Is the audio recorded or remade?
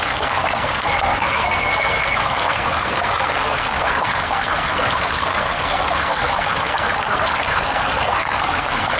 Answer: remade